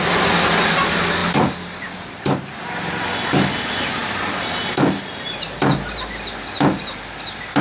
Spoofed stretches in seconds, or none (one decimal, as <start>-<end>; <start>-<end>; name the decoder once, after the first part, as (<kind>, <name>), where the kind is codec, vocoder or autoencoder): none